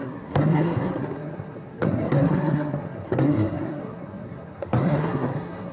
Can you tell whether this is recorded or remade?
remade